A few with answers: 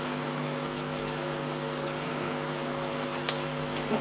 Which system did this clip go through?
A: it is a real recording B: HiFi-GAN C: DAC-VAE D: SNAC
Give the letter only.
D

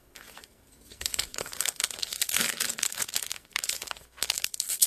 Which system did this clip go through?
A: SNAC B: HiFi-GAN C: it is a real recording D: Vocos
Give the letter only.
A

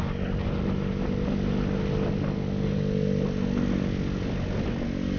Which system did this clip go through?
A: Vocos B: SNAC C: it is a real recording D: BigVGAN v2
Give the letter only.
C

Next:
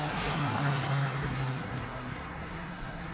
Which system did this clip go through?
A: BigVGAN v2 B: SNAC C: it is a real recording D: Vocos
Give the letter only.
B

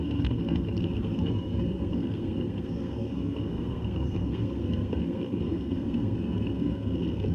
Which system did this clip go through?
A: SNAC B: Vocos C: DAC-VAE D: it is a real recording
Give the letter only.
A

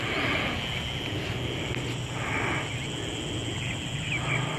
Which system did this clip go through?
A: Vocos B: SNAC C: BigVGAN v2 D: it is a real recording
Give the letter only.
D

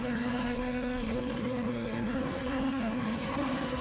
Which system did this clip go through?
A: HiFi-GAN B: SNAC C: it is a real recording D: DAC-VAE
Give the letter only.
B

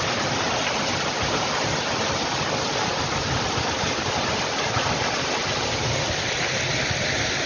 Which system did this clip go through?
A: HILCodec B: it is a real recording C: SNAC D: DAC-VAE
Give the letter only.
B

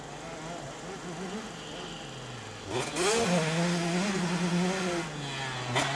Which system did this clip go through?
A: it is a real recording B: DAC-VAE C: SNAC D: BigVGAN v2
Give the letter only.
A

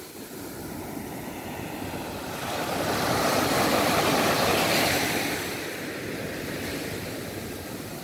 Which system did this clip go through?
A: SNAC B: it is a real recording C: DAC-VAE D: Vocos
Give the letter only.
B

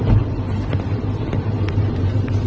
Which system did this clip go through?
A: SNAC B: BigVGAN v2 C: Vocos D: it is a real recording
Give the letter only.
D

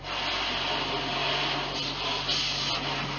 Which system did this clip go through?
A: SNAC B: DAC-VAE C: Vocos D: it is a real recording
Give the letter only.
D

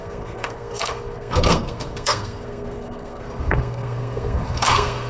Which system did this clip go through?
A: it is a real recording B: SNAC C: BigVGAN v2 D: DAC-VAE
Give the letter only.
B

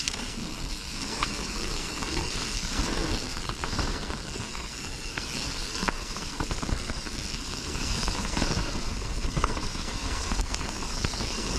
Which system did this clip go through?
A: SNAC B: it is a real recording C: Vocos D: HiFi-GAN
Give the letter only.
A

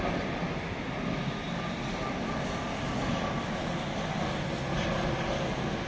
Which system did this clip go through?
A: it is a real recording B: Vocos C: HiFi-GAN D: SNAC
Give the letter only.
A